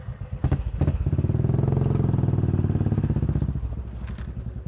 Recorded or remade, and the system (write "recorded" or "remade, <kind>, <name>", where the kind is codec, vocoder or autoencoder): recorded